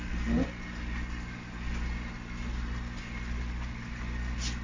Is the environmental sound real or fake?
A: real